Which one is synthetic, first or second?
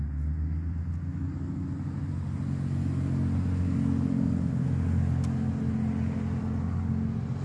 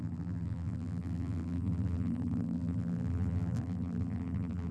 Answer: second